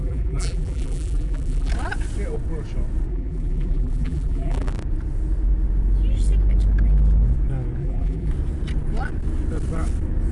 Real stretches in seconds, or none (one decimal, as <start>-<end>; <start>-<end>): 1.7-3.1; 4.7-7.8; 8.3-10.3